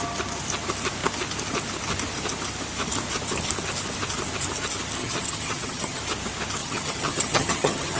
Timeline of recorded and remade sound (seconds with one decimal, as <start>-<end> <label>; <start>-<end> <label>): 0.0-5.0 recorded; 5.0-6.0 remade; 6.0-6.6 recorded; 6.6-8.0 remade